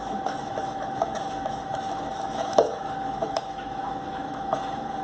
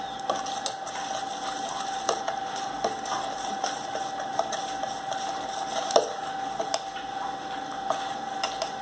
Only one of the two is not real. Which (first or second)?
first